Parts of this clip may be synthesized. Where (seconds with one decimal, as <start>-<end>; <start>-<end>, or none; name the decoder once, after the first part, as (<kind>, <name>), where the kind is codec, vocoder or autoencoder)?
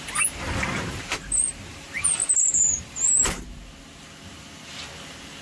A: none